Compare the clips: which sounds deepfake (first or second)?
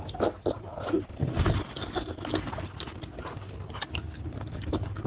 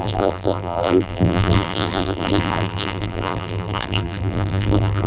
second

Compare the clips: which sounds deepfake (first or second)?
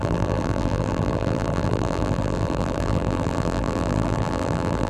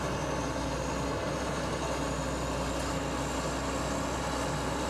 first